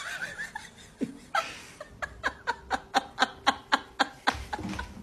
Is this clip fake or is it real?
real